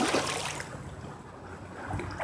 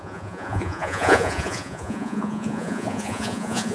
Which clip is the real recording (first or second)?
first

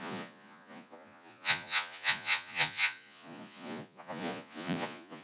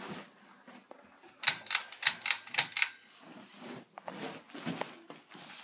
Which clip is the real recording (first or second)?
second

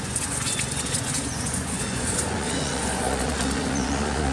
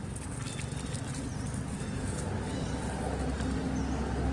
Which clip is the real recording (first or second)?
second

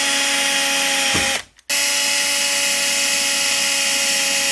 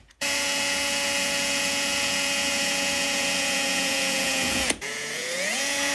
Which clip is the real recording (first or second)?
first